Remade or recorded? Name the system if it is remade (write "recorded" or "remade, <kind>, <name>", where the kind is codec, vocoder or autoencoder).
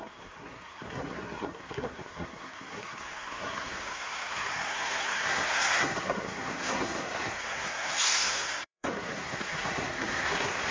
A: remade, codec, SNAC